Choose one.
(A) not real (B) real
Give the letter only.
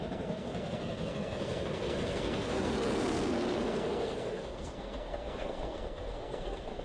A